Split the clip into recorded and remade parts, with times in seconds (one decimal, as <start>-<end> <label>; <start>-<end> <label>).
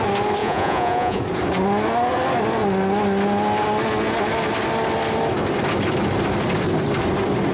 0.0-0.4 recorded; 0.4-1.2 remade; 1.2-7.5 recorded